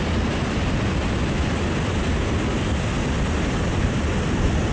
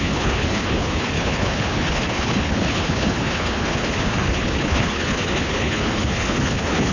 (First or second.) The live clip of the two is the first